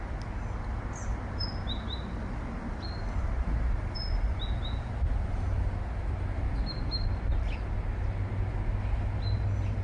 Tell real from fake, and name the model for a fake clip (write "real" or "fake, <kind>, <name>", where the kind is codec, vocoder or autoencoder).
real